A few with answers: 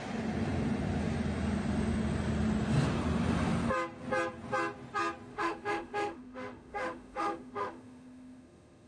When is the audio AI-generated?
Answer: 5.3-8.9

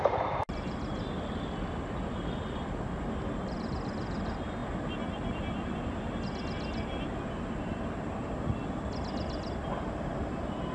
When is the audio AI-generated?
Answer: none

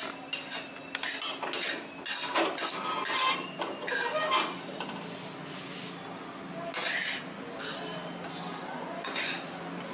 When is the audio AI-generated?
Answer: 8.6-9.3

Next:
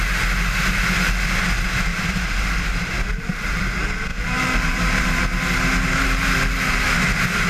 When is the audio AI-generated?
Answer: 1.9-3.6; 4.1-5.2

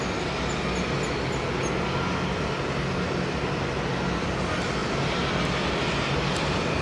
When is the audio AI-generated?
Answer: none

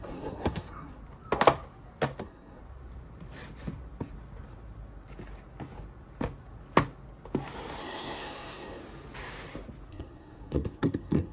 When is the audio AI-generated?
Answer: 0.0-1.0; 2.2-2.6; 7.8-8.8; 9.9-11.3

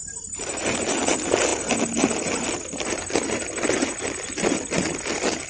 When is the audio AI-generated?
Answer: 0.0-0.8